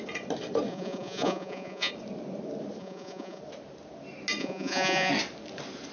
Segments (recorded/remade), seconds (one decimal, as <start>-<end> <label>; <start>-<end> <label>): 0.0-0.7 recorded; 0.7-1.9 remade; 1.9-2.8 recorded; 2.8-3.4 remade; 3.4-4.4 recorded; 4.4-5.1 remade; 5.1-5.9 recorded